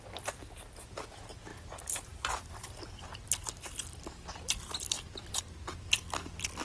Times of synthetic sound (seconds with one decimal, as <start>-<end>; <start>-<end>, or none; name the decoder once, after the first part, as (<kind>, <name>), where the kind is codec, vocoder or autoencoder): none